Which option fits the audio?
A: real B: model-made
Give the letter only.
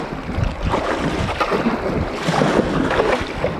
A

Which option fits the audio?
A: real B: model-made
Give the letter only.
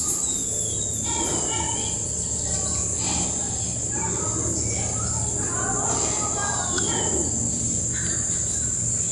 A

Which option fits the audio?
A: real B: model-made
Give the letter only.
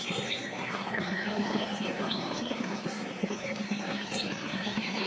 B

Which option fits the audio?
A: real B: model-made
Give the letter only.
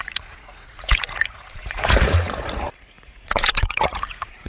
B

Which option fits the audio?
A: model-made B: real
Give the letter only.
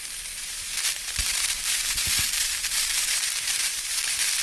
A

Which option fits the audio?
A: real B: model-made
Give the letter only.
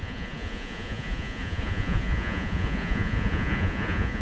B